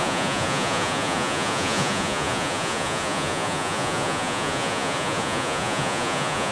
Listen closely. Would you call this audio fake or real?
fake